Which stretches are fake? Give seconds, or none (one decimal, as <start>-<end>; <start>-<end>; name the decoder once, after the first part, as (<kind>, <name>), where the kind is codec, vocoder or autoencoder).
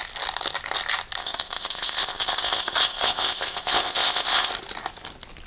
1.2-4.5 (codec, ZipCodec)